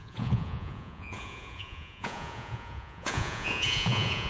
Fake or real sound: fake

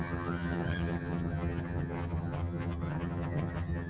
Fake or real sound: fake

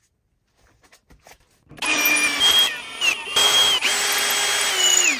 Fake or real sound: real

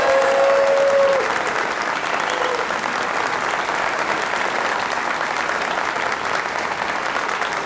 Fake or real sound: real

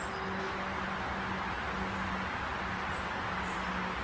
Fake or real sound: real